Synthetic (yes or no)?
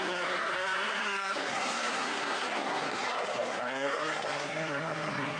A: yes